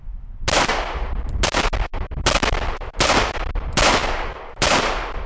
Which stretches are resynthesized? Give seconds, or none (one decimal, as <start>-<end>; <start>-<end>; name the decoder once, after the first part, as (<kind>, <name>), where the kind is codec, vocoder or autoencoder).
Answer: none